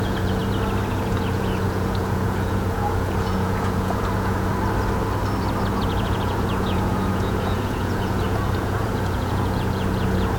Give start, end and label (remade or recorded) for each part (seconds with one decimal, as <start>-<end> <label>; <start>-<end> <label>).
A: 0.0-0.4 remade; 0.4-0.9 recorded; 0.9-4.5 remade; 4.5-5.8 recorded; 5.8-10.4 remade